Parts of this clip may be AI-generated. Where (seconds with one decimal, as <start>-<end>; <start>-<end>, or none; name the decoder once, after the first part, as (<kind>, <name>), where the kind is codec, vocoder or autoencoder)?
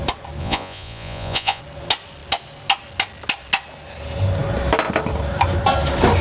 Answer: 0.4-1.6 (vocoder, Vocos)